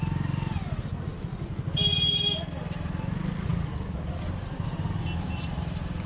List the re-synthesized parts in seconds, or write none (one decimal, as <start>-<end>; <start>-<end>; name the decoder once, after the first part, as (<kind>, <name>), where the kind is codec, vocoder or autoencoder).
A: none